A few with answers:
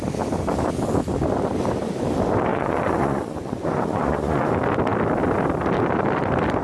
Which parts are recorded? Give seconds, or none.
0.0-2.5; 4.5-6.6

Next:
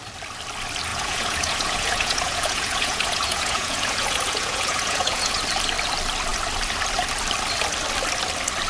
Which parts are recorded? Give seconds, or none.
0.0-0.9; 5.4-8.7

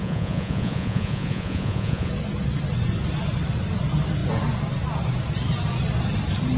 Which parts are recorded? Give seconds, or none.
2.1-6.6